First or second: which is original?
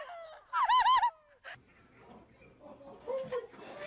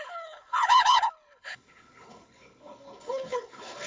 first